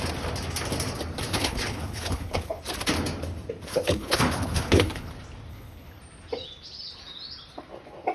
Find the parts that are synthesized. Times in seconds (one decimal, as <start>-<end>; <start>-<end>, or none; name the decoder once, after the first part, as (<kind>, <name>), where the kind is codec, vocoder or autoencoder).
1.3-2.6 (codec, HILCodec); 3.7-5.1; 5.5-6.0